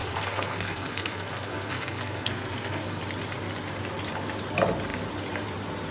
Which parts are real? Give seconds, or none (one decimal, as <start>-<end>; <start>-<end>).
3.0-5.9